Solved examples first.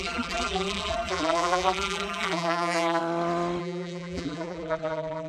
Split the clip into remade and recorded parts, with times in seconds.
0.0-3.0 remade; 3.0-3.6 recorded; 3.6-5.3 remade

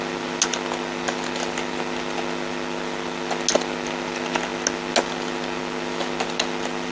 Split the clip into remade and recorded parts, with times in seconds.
0.0-6.9 recorded

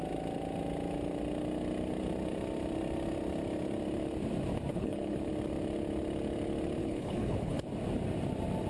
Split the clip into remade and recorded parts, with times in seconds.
0.0-4.7 recorded; 4.7-5.3 remade; 5.3-6.8 recorded; 6.8-7.6 remade; 7.6-8.7 recorded

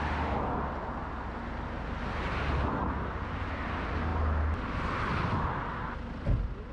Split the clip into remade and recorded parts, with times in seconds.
0.0-6.7 recorded

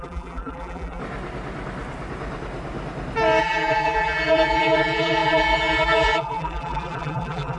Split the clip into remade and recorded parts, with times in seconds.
0.0-1.0 remade; 1.0-3.4 recorded; 3.4-7.6 remade